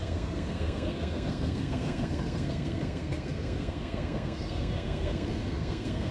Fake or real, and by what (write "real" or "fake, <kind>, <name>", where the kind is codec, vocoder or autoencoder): fake, codec, SNAC